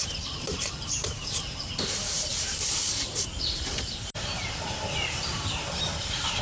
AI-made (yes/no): yes